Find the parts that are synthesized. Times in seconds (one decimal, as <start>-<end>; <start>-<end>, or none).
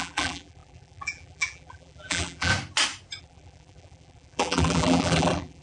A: 0.0-2.5; 3.2-5.6